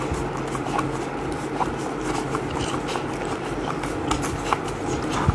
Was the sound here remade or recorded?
recorded